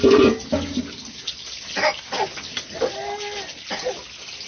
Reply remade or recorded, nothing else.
recorded